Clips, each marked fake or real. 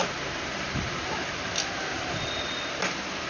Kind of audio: real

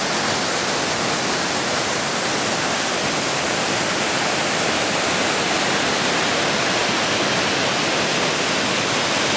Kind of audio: real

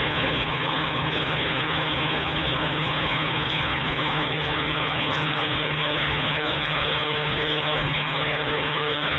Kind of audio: fake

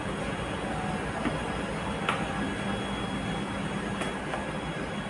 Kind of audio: real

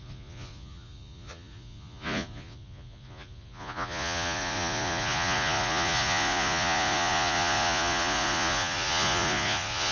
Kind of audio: fake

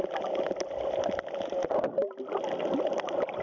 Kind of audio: real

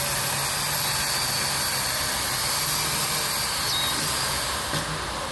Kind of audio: real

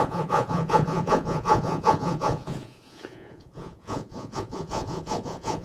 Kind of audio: fake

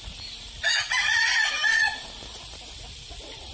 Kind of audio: fake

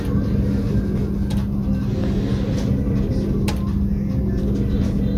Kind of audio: real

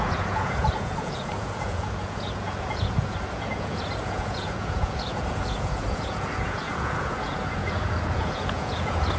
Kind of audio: fake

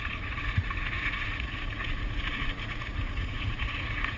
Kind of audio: fake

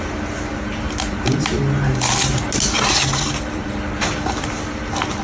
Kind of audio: real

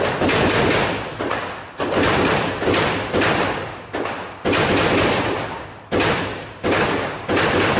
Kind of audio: real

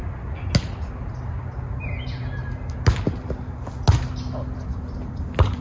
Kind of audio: real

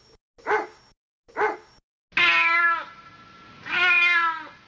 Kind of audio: real